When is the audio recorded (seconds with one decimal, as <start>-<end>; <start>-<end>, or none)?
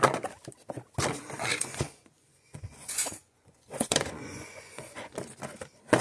0.0-1.5; 5.1-6.0